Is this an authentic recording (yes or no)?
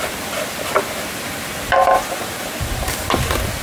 yes